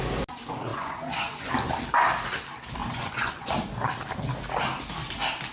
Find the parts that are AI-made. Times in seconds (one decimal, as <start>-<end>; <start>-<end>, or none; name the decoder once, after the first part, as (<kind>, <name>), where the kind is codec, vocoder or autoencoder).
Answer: 0.7-1.5 (vocoder, Vocos); 2.8-3.5